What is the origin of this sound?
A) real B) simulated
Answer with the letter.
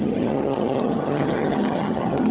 B